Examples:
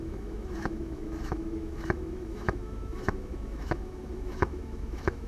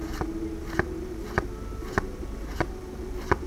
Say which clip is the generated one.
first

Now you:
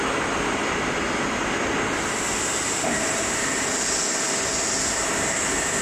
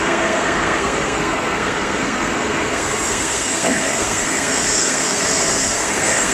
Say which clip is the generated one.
second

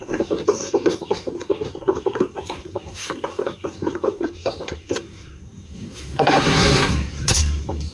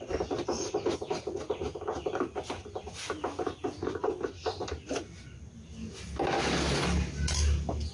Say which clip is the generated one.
first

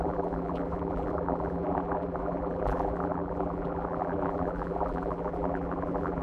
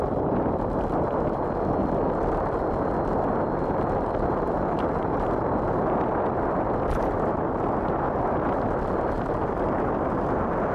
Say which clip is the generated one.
first